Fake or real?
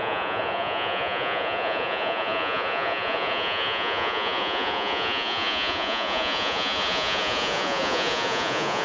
fake